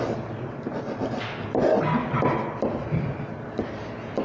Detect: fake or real real